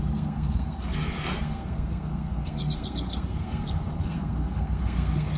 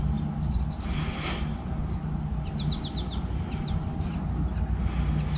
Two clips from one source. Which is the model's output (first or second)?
first